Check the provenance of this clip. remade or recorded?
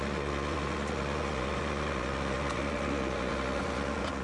remade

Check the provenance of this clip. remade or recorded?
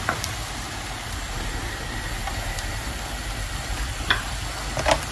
recorded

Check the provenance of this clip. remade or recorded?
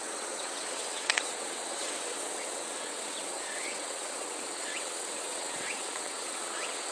remade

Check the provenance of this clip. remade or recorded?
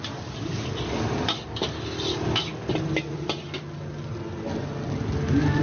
recorded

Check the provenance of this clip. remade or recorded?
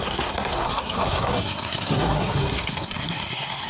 remade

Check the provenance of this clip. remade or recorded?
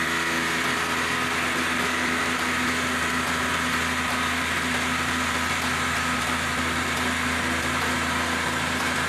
recorded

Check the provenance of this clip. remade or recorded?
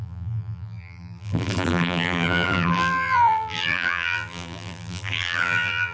remade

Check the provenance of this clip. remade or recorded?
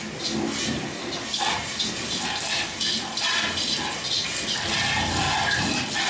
recorded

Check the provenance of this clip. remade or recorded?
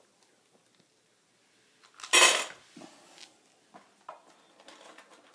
recorded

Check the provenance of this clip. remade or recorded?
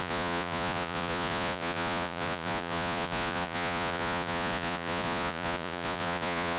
remade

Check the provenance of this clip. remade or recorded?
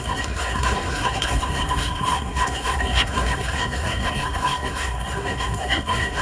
remade